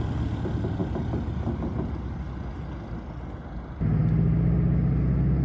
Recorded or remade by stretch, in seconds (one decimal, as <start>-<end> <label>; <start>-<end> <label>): 0.0-5.4 recorded